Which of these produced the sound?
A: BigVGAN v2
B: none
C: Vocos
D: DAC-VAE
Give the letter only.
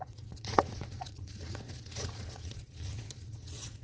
C